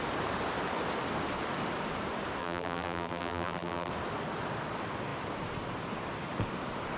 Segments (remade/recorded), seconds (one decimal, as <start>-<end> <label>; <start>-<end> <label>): 0.0-2.4 recorded; 2.4-3.9 remade; 3.9-7.0 recorded